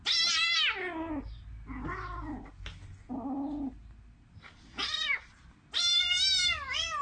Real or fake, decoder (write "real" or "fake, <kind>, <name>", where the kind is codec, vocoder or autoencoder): real